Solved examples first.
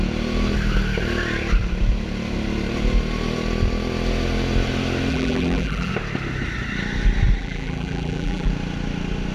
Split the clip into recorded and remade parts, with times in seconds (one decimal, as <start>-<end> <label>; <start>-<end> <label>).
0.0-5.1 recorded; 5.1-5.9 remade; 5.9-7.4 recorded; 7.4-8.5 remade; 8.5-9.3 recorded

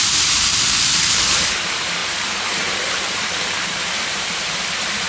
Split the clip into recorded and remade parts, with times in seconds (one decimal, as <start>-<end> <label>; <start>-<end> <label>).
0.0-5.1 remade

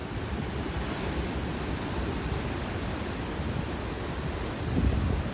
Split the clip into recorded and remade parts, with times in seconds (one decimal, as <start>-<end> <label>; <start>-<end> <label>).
0.0-2.9 remade; 2.9-5.3 recorded